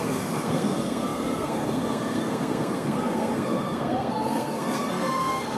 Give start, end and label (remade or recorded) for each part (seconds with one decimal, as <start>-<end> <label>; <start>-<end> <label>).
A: 0.0-5.6 remade

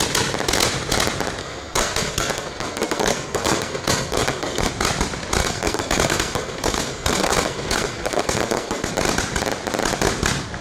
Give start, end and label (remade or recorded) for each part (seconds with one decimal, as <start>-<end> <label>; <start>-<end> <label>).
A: 0.0-1.4 recorded; 1.4-4.7 remade; 4.7-5.4 recorded; 5.4-8.9 remade; 8.9-10.6 recorded

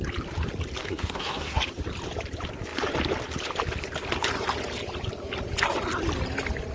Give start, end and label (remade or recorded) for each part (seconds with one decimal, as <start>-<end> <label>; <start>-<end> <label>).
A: 0.0-0.8 recorded; 0.8-1.6 remade; 1.6-6.7 recorded

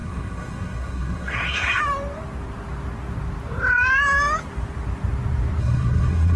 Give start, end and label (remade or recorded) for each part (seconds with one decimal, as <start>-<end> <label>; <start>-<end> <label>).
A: 0.0-1.8 remade; 1.8-5.6 recorded; 5.6-6.4 remade

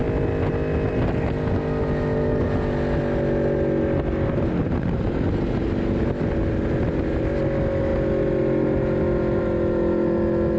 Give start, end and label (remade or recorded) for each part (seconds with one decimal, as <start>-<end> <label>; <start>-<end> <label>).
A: 0.0-10.6 recorded

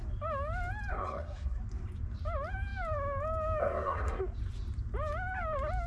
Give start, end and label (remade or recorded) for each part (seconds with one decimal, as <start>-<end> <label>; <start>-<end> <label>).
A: 0.0-0.9 recorded; 0.9-1.6 remade; 1.6-3.6 recorded; 3.6-4.2 remade; 4.2-5.9 recorded